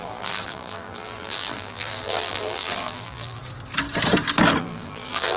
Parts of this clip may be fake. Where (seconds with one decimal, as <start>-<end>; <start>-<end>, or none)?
0.0-3.4; 4.6-5.4